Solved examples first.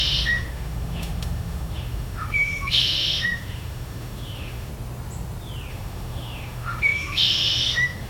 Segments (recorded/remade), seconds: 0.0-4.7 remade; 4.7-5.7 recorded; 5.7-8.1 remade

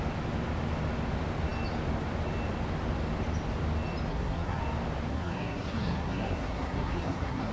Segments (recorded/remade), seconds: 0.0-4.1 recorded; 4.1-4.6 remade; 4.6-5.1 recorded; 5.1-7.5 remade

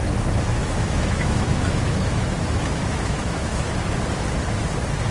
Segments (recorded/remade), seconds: 0.0-0.6 recorded; 0.6-3.7 remade; 3.7-5.1 recorded